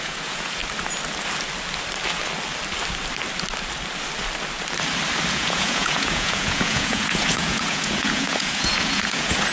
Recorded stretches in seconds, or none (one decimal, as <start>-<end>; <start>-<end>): 0.6-5.3